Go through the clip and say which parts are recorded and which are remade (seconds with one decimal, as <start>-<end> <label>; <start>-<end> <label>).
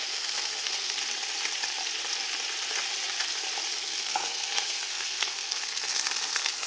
0.0-1.0 remade; 1.0-3.7 recorded; 3.7-6.7 remade